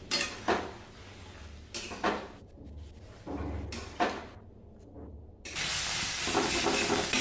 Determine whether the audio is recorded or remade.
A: recorded